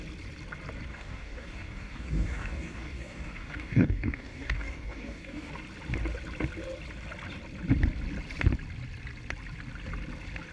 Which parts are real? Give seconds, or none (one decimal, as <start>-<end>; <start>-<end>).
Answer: 0.0-0.9; 5.5-10.5